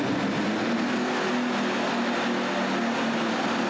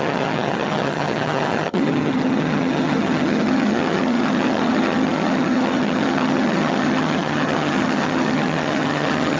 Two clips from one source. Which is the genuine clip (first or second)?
first